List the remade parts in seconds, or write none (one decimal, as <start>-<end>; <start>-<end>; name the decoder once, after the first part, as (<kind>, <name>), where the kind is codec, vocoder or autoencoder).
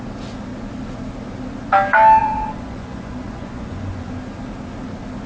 2.2-4.1 (vocoder, Vocos)